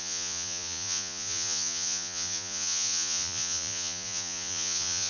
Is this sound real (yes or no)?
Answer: no